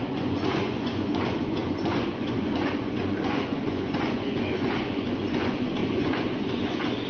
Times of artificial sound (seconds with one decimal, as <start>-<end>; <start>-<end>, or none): 0.0-7.1

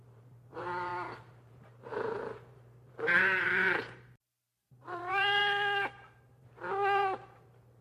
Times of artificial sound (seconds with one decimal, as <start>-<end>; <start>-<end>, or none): 0.0-0.9; 1.5-5.4; 6.3-7.8

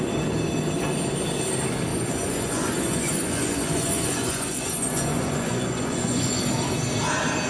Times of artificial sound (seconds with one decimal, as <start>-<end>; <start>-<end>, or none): 1.9-6.4